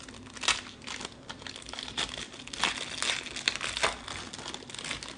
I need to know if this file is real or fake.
real